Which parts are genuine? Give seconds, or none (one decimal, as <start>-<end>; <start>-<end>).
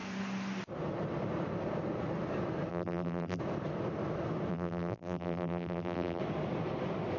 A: 0.0-2.7; 3.4-4.5; 6.2-7.2